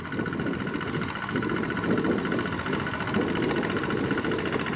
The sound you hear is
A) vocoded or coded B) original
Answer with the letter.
B